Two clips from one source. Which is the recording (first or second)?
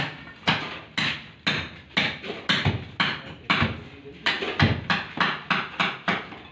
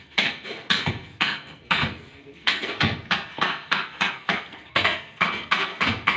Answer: first